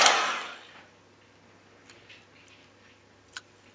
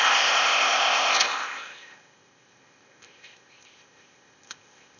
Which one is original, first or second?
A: first